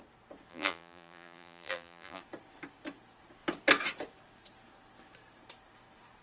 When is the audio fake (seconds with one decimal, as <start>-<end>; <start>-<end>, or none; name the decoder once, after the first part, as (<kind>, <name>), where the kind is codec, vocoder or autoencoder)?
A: 0.5-2.2 (vocoder, BigVGAN v2)